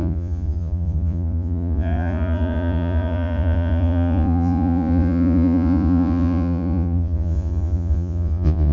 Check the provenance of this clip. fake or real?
fake